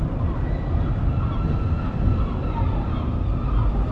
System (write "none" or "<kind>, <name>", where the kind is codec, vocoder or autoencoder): none